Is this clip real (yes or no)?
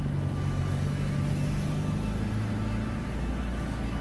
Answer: yes